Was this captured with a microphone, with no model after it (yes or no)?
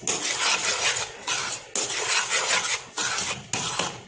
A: yes